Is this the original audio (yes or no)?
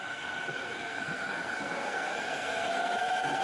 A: no